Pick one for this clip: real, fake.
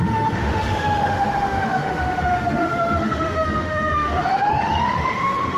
fake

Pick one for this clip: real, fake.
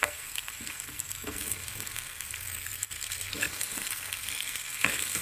fake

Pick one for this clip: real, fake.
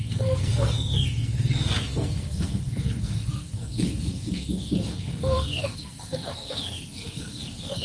fake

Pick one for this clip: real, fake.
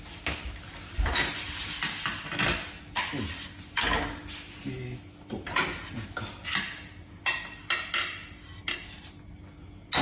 real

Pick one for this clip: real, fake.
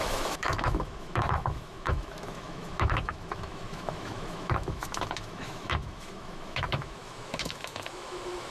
fake